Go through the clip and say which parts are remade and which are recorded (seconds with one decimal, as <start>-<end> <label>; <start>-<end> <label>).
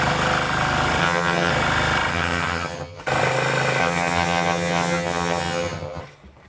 0.0-1.0 recorded; 1.0-1.5 remade; 1.5-2.1 recorded; 2.1-3.0 remade; 3.0-3.8 recorded; 3.8-6.0 remade; 6.0-6.5 recorded